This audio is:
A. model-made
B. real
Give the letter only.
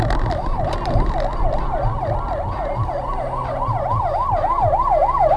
B